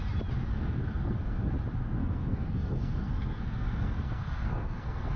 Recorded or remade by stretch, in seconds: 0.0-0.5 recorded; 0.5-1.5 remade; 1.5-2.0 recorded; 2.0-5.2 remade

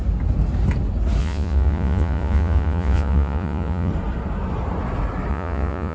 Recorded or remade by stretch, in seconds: 0.0-1.2 recorded; 1.2-3.9 remade; 3.9-5.3 recorded; 5.3-5.9 remade

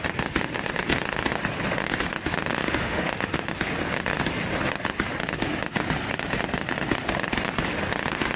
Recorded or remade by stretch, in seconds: 0.0-2.5 recorded; 2.5-3.5 remade; 3.5-8.4 recorded

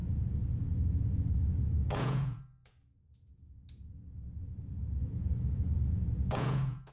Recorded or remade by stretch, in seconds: 0.0-3.5 remade; 3.5-5.0 recorded; 5.0-6.9 remade